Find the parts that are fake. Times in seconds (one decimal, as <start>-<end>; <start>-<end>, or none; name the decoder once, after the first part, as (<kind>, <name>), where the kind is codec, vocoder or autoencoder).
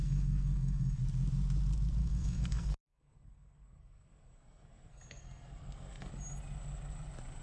0.0-1.0 (codec, SNAC); 2.0-6.1